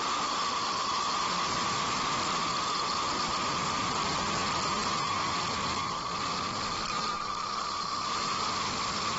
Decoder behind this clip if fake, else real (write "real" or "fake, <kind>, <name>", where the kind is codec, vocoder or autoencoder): real